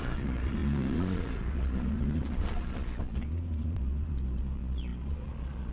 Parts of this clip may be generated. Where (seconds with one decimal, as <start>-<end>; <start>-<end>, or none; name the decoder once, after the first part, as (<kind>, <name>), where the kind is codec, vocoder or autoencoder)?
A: 0.0-5.7 (vocoder, Vocos)